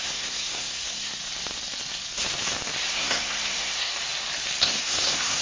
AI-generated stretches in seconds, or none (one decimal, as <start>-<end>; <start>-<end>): 0.0-1.2; 2.9-3.9; 4.6-5.4

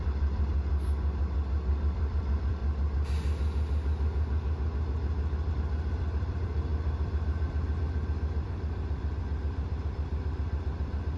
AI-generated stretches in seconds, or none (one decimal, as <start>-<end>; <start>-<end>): 0.0-0.5; 1.7-2.6; 5.5-11.2

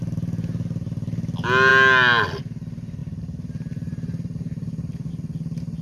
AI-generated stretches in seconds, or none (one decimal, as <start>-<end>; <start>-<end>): 3.0-5.1

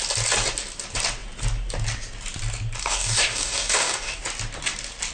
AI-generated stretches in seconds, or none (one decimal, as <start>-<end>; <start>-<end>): 2.8-4.2

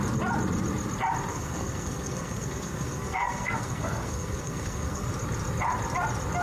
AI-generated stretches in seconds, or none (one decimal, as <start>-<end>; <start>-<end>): 1.3-5.1